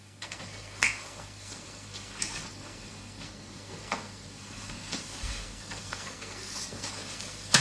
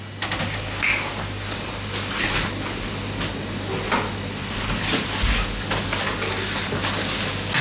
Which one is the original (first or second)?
second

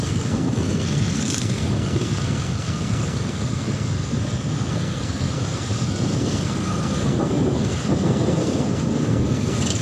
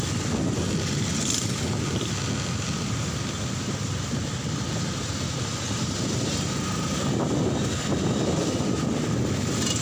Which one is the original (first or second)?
second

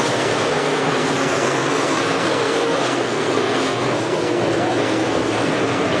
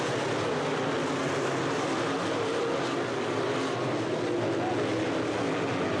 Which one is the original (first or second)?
second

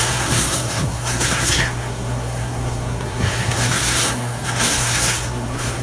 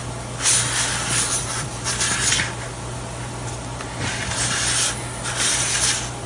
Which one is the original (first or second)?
second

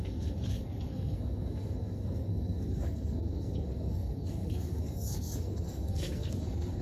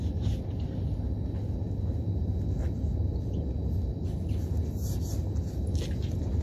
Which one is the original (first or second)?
second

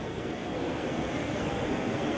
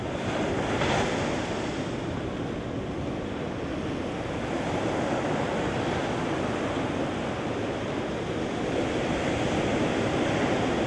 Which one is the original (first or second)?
second